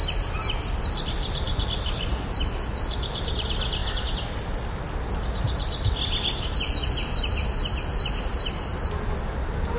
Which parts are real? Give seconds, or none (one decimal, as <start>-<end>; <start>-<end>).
0.0-1.1; 3.8-8.1; 8.7-9.8